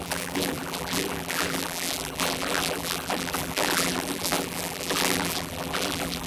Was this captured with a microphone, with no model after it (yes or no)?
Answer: no